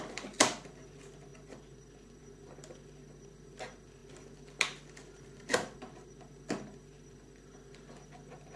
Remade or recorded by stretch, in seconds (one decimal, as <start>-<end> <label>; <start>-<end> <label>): 0.0-8.6 recorded